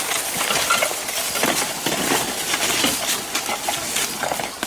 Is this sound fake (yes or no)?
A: no